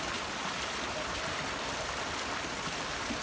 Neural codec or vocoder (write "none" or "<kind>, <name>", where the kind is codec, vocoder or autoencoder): none